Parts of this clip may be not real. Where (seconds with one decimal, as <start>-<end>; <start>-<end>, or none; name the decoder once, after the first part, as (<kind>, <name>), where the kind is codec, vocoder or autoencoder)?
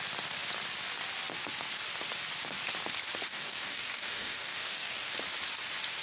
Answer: 3.3-5.1 (codec, DAC)